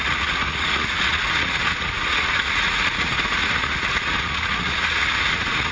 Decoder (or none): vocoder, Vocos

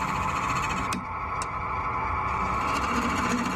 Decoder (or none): none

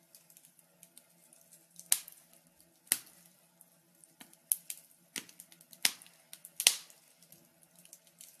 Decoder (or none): none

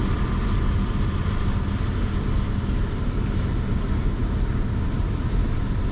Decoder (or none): none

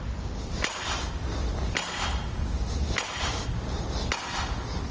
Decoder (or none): none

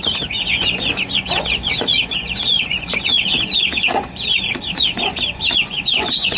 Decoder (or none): vocoder, Vocos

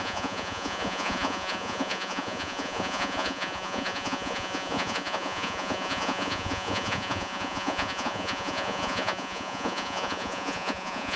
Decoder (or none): vocoder, Vocos